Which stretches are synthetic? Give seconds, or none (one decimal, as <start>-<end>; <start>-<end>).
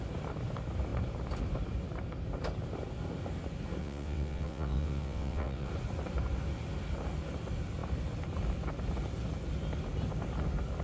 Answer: 3.8-5.7